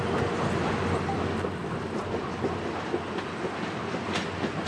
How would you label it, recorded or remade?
recorded